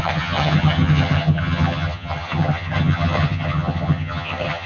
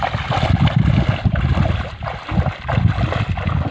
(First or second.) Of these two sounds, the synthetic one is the first